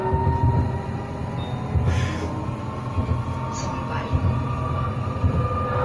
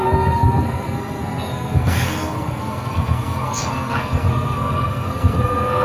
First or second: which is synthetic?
second